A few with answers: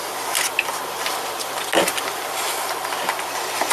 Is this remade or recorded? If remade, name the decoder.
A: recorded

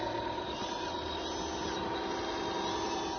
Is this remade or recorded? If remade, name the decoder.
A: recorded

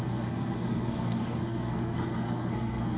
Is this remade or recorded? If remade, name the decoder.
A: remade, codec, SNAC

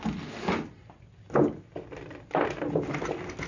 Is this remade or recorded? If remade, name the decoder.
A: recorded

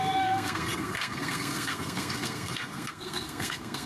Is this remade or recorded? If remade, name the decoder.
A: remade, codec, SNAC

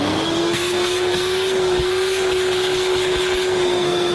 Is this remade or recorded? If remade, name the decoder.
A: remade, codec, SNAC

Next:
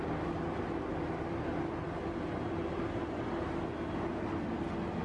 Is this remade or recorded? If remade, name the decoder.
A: recorded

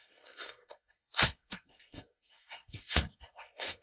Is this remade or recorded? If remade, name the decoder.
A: remade, codec, SNAC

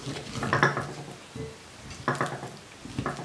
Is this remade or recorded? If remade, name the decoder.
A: recorded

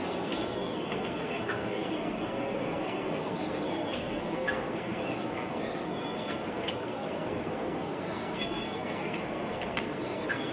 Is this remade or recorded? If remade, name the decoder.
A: remade, codec, SNAC